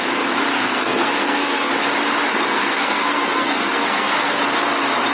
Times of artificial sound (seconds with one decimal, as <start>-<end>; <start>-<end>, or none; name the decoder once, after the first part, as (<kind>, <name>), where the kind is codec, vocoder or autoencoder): 0.5-1.7 (codec, SNAC); 2.3-4.3